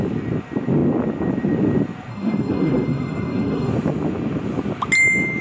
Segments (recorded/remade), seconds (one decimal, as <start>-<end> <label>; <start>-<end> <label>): 0.0-2.1 recorded; 2.1-3.7 remade; 3.7-5.4 recorded